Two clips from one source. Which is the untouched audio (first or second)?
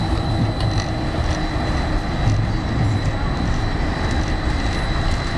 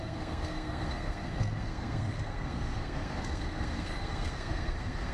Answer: first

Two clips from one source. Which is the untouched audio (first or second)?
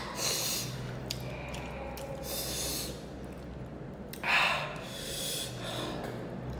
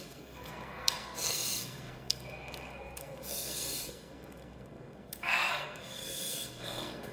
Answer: first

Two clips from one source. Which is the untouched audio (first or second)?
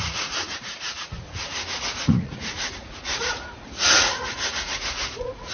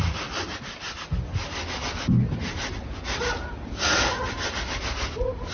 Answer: second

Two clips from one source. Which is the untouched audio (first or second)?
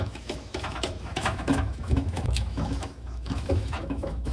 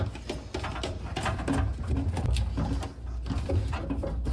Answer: second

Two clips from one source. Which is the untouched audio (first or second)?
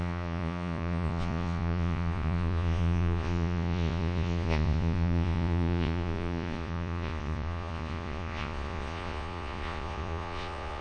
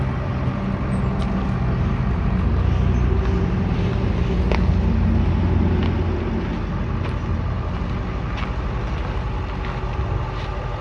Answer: second